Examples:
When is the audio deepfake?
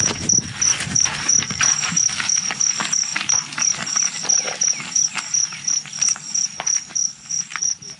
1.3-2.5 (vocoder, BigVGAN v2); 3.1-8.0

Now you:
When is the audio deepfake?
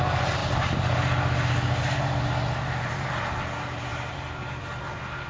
3.9-4.6 (vocoder, BigVGAN v2)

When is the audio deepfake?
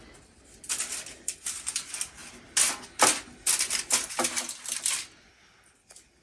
none